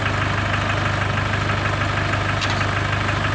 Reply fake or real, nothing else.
real